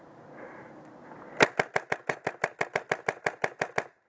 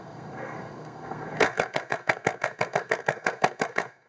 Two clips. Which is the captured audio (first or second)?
first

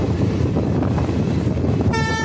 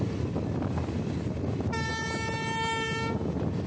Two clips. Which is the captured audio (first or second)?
second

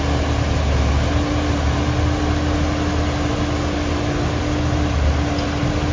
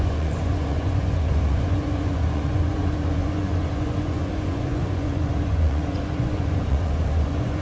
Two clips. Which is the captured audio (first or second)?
first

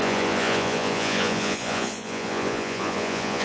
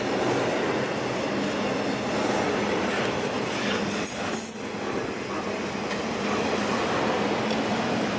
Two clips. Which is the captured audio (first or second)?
second